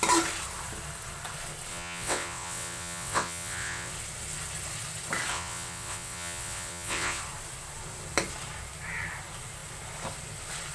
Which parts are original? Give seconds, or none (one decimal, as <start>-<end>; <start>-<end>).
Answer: 0.0-1.7; 3.9-5.3; 7.2-10.7